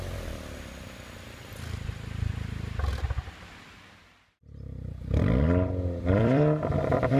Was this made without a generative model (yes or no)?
no